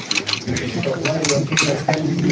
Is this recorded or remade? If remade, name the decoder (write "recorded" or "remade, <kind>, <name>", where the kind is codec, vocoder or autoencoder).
recorded